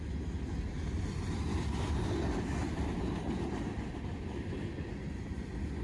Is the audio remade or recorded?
recorded